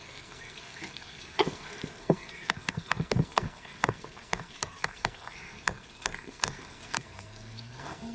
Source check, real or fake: fake